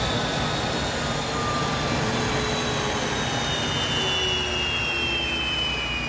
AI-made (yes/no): no